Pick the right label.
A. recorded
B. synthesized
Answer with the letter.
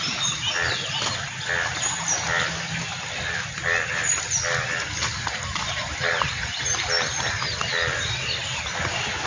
A